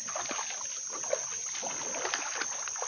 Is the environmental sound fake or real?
real